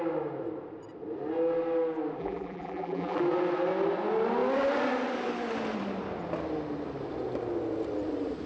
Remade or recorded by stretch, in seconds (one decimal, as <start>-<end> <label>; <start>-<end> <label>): 0.0-2.2 recorded; 2.2-3.2 remade; 3.2-8.5 recorded